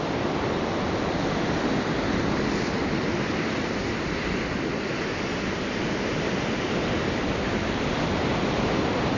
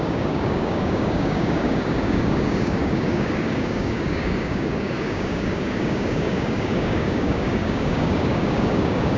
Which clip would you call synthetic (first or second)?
second